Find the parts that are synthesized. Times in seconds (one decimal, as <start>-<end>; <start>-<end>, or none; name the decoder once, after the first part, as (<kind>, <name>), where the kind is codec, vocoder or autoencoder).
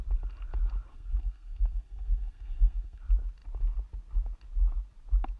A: 0.9-3.0 (codec, SNAC)